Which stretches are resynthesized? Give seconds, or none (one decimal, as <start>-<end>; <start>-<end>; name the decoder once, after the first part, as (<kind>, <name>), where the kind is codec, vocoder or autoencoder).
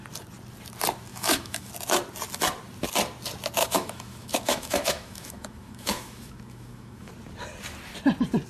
1.1-1.7 (autoencoder, DAC-VAE); 3.6-7.1